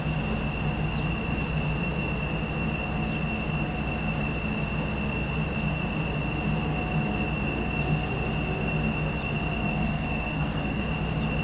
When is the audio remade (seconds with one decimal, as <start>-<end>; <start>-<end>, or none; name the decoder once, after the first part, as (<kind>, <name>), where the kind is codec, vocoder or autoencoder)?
9.6-10.8 (codec, SNAC)